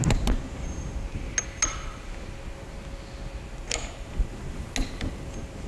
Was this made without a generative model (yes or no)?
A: yes